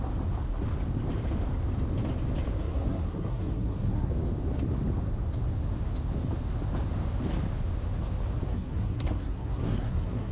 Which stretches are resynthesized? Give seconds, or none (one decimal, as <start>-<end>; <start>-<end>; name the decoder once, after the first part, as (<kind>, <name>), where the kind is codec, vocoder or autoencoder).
2.6-4.1 (codec, SNAC); 8.5-10.3